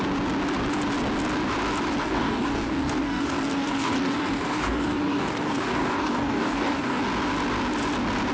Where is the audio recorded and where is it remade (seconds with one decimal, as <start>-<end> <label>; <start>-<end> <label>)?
0.0-2.0 recorded; 2.0-7.0 remade; 7.0-8.3 recorded